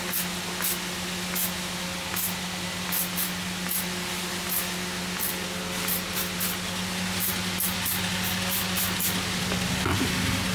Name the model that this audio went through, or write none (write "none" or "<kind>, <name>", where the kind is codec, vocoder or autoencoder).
none